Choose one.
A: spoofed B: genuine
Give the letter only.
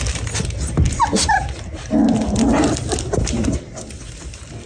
B